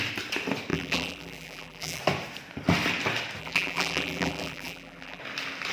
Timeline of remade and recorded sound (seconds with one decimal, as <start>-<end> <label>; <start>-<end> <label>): 0.0-0.7 recorded; 0.7-2.0 remade; 2.0-3.4 recorded; 3.4-5.2 remade; 5.2-5.7 recorded